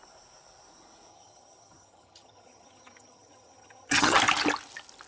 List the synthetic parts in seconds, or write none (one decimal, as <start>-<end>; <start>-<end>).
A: 1.1-4.2